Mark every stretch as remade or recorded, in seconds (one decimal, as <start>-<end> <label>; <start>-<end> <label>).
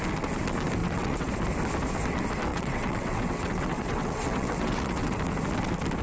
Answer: 0.0-0.8 recorded; 0.8-1.3 remade; 1.3-2.5 recorded; 2.5-5.2 remade; 5.2-6.0 recorded